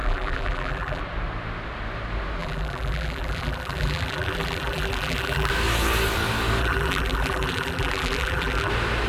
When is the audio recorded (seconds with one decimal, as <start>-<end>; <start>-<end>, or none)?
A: 1.0-2.4; 5.5-6.6; 8.7-9.1